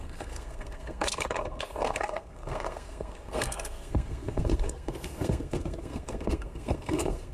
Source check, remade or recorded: remade